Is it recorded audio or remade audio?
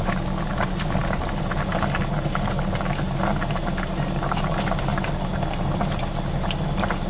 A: recorded